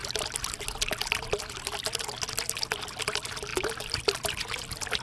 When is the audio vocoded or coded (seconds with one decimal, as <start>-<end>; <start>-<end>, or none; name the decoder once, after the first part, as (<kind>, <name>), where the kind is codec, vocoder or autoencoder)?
none